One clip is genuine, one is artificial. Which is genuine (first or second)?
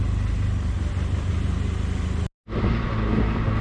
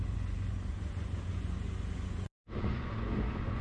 first